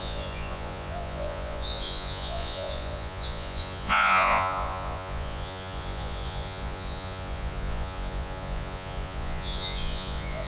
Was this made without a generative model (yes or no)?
no